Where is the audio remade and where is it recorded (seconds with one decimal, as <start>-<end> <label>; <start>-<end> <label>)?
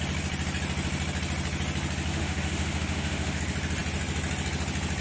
0.0-2.1 recorded; 2.1-3.4 remade; 3.4-5.0 recorded